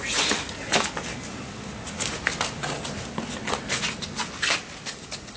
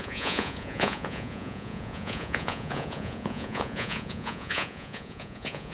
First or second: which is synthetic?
second